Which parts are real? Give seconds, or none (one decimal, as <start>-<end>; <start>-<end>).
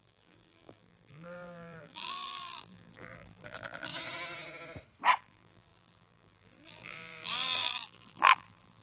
3.9-5.2